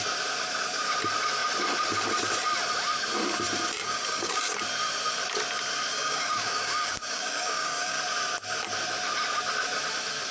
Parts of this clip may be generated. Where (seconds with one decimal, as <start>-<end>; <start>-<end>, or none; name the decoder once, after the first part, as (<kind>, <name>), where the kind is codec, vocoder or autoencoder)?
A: 3.8-4.5 (codec, DAC); 5.9-8.0